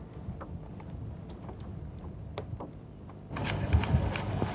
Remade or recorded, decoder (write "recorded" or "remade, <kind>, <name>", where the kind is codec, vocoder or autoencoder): recorded